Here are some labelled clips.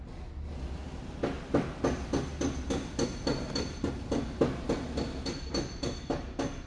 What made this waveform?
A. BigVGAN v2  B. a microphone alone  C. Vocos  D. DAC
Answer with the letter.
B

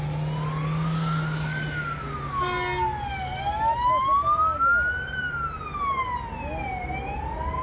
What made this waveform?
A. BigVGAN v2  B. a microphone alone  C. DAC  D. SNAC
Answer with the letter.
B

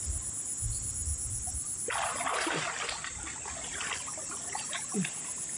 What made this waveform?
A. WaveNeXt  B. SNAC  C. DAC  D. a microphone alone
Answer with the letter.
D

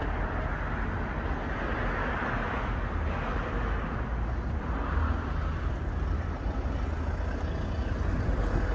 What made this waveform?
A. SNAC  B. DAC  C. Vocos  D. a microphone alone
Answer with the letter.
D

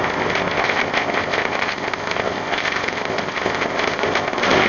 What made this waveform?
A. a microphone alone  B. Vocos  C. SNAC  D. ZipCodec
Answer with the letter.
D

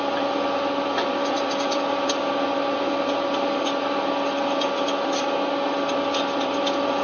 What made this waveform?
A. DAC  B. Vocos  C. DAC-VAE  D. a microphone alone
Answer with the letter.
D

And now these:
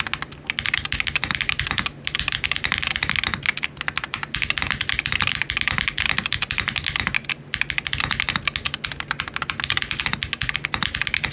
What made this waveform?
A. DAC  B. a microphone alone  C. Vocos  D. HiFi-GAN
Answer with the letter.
B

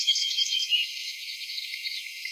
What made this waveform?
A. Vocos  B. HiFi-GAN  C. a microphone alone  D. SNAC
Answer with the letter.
D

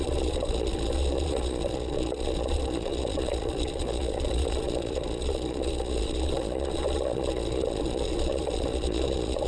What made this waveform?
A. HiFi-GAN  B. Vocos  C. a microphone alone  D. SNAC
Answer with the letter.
B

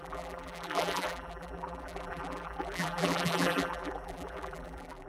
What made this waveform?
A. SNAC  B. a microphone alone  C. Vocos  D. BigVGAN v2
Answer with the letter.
D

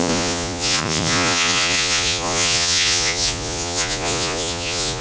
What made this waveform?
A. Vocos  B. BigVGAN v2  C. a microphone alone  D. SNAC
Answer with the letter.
A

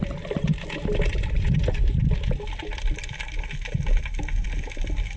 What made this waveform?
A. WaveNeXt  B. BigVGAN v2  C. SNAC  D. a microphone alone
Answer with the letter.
D